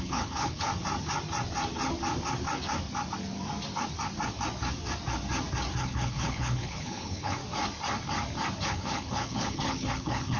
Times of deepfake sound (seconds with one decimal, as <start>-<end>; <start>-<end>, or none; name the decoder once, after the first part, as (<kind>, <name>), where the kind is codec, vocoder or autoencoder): 0.0-0.7 (codec, HILCodec); 5.8-7.4; 8.6-10.4